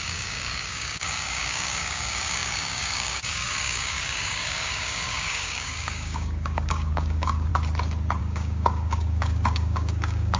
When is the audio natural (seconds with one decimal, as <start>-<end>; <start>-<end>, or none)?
7.5-8.2